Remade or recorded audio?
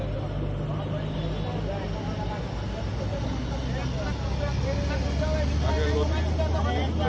recorded